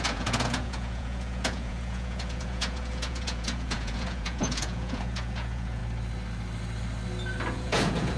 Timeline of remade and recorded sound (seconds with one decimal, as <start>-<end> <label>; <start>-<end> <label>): 0.0-5.8 remade; 5.8-7.5 recorded; 7.5-8.2 remade